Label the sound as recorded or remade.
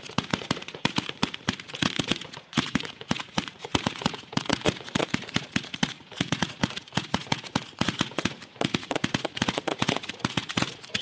remade